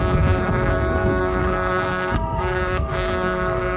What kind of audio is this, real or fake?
fake